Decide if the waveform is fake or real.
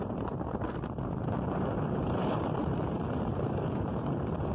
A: fake